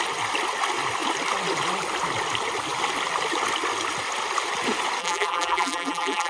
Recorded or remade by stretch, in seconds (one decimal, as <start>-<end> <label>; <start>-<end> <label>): 0.0-5.0 recorded; 5.0-6.3 remade